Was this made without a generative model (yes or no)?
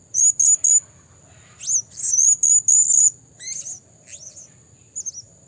yes